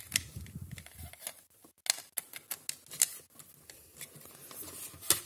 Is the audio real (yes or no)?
yes